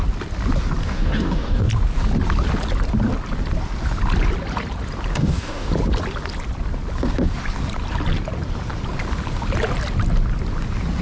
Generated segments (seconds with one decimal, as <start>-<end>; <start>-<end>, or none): 0.8-1.7; 5.1-5.7